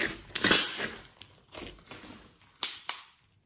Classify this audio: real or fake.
real